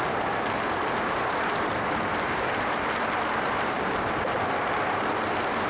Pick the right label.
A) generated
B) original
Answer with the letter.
B